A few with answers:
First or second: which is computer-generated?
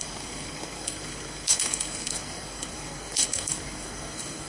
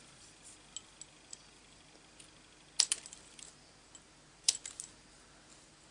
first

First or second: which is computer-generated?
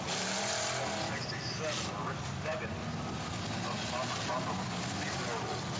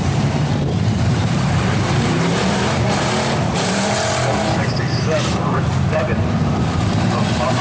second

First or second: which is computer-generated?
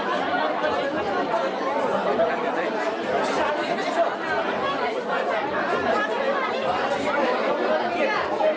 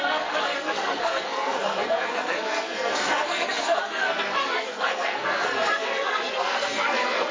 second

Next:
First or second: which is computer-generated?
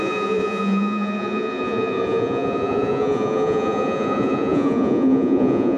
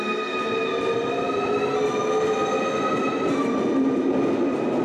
first